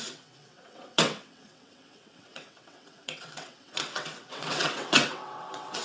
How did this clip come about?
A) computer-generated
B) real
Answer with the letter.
A